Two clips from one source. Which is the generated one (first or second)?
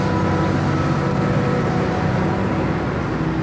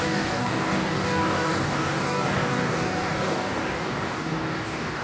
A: second